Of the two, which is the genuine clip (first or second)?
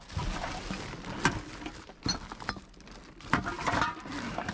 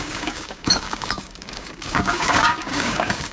first